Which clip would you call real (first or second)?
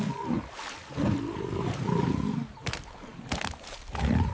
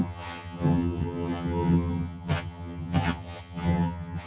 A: first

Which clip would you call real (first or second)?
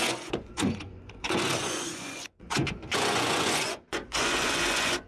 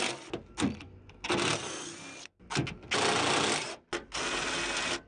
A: second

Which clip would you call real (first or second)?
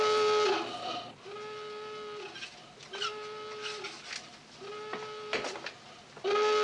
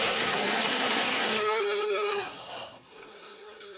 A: first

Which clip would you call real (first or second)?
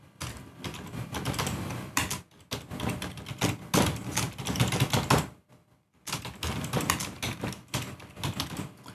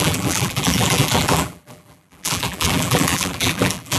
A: first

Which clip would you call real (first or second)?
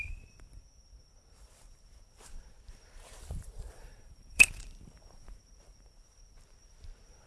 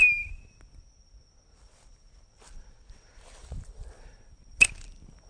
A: second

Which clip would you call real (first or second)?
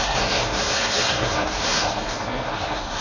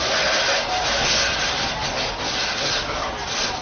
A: second